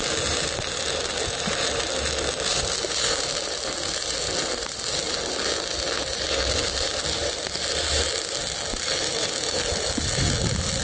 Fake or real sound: real